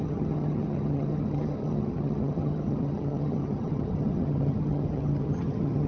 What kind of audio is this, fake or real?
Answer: fake